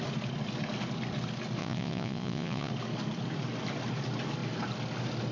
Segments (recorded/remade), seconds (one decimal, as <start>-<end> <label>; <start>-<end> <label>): 0.0-1.6 recorded; 1.6-2.7 remade; 2.7-5.3 recorded